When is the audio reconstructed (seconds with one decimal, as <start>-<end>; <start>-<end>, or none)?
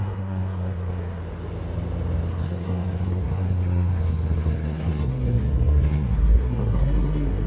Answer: 0.0-1.2; 2.3-7.5